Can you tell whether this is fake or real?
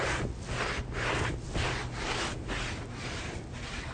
real